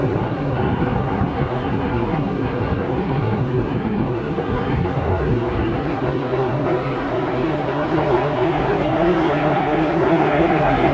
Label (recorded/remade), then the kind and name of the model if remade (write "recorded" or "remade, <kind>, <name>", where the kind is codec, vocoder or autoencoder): remade, codec, SNAC